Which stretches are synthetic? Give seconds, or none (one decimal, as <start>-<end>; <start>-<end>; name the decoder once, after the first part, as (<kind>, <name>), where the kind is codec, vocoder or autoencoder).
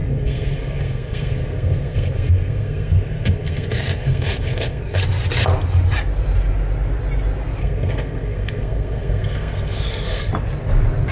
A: 0.0-5.0 (codec, SNAC); 7.6-10.3